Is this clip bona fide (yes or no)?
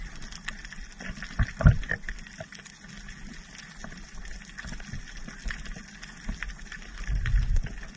yes